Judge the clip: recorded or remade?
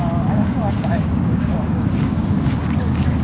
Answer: remade